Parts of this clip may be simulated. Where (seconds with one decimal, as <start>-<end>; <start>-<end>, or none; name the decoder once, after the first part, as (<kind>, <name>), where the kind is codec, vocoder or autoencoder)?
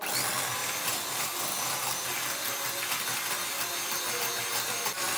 none